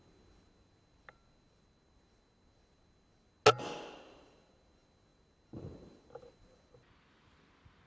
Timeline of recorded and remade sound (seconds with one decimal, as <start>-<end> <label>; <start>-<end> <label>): 0.0-7.9 recorded